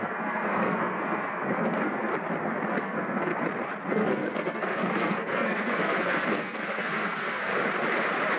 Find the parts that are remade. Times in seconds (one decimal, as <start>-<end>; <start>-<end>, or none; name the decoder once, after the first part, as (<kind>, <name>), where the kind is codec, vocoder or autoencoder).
0.0-2.1 (codec, SNAC); 2.7-3.3; 3.9-7.5